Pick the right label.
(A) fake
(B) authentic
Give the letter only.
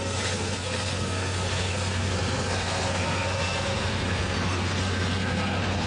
A